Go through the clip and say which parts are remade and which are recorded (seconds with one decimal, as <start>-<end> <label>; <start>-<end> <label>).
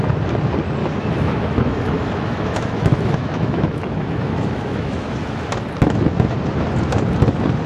0.0-0.8 recorded; 0.8-5.4 remade; 5.4-7.7 recorded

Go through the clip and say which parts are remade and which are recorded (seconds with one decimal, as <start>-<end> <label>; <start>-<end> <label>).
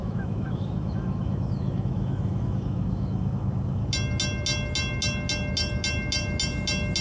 0.0-3.9 remade; 3.9-7.0 recorded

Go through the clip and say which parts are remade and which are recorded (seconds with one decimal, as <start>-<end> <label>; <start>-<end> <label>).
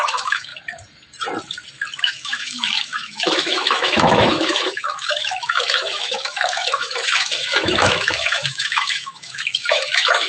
0.0-0.5 remade; 0.5-2.0 recorded; 2.0-10.3 remade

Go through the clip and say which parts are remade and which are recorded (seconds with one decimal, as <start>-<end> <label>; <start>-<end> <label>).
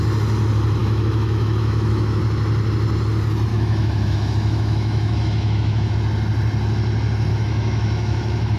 0.0-0.8 recorded; 0.8-2.2 remade; 2.2-3.5 recorded; 3.5-5.9 remade; 5.9-7.3 recorded; 7.3-8.6 remade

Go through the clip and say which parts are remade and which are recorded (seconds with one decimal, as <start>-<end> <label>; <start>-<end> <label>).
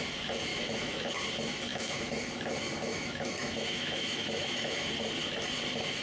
0.0-0.5 recorded; 0.5-1.1 remade; 1.1-1.7 recorded; 1.7-2.2 remade; 2.2-2.9 recorded; 2.9-4.9 remade; 4.9-6.0 recorded